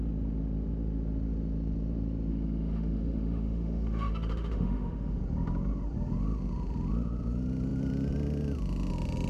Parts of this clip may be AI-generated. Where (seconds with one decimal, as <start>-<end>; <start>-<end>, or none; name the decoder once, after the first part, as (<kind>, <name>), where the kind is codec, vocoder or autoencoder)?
2.3-5.2 (autoencoder, DAC-VAE)